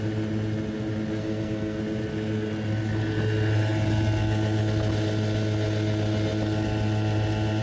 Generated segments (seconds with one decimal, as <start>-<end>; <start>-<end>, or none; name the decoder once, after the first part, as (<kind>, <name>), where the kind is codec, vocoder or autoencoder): 1.2-1.8 (codec, SNAC)